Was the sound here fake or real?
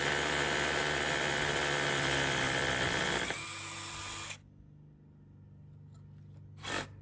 real